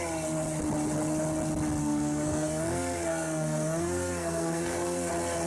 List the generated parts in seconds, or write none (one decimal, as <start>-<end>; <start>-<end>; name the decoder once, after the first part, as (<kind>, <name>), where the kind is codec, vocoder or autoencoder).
1.8-5.1 (codec, SNAC)